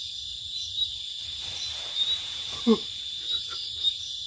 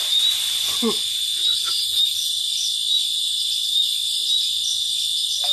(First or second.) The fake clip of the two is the first